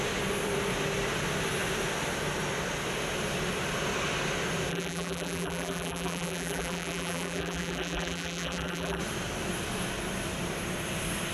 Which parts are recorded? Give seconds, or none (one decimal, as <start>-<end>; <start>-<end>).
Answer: 0.0-4.7; 9.0-11.3